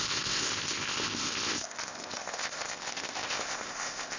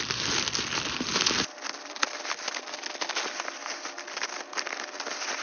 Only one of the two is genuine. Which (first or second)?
second